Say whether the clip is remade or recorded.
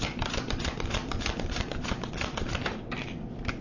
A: recorded